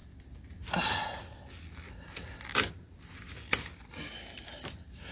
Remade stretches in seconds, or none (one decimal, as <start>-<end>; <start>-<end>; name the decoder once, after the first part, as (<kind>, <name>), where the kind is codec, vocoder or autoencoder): none